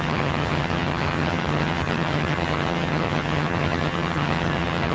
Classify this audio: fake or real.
fake